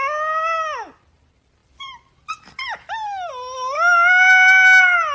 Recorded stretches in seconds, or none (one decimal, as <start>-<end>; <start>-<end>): 0.0-5.1